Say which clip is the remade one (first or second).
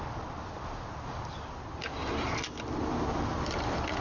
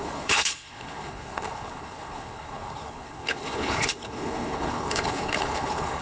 second